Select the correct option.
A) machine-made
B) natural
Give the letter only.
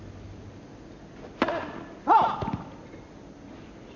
B